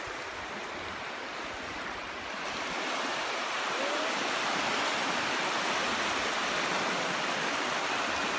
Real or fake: real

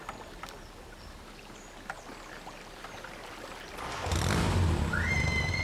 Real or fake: real